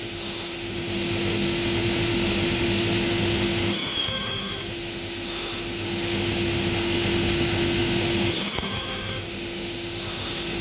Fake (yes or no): yes